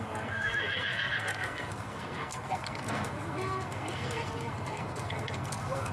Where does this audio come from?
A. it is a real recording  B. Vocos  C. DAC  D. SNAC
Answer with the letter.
D